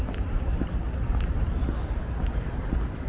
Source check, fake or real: real